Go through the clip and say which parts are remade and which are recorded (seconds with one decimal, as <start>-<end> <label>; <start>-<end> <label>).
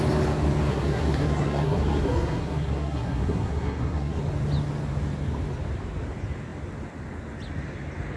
0.0-0.7 recorded; 0.7-4.2 remade; 4.2-8.2 recorded